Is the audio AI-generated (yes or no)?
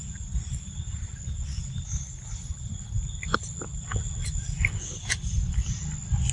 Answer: no